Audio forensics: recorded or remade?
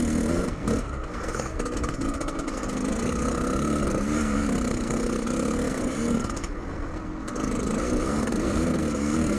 remade